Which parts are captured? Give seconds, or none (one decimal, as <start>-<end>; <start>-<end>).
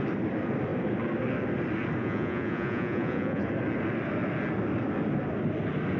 0.0-2.0; 3.4-6.0